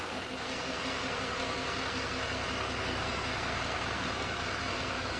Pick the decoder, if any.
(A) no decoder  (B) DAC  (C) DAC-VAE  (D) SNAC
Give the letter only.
D